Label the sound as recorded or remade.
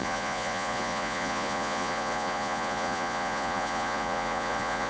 remade